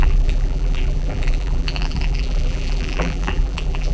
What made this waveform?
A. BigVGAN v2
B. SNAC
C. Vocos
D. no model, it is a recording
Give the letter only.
A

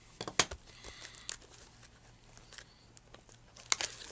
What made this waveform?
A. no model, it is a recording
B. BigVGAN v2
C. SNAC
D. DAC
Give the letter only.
A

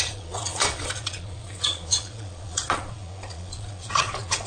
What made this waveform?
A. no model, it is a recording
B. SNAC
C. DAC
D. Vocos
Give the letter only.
D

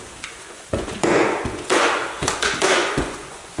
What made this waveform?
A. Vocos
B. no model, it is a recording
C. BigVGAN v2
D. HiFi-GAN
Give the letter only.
A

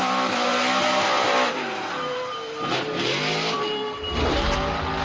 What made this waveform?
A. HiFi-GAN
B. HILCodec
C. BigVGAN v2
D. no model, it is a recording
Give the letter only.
D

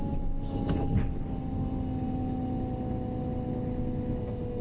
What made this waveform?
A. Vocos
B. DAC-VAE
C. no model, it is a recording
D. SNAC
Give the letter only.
C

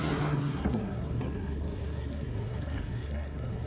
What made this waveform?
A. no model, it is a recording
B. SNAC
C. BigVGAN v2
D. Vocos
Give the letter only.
B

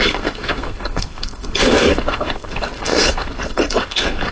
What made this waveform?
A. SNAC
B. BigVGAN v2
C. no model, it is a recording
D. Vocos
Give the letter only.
A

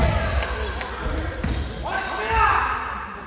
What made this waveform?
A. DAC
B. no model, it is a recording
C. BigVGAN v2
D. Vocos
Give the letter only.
B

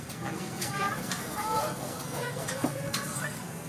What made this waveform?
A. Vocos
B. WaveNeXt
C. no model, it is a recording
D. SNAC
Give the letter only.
D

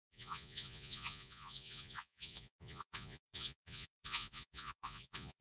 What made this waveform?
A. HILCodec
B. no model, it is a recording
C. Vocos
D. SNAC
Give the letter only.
C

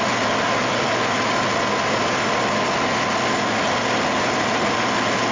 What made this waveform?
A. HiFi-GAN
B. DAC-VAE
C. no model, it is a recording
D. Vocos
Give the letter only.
C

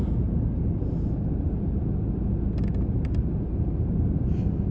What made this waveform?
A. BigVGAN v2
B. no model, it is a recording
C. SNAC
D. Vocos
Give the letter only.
B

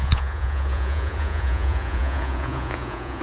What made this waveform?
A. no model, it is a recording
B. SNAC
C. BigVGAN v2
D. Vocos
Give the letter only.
D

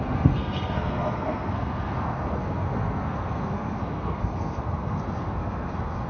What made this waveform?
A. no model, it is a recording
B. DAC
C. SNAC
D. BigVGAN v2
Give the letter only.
C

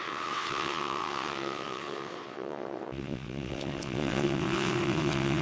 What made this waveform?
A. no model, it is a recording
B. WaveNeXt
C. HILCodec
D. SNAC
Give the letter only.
B